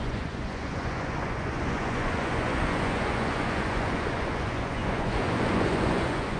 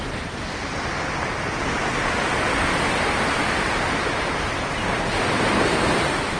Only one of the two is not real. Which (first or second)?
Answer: first